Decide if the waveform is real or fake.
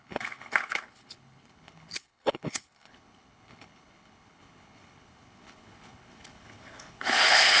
fake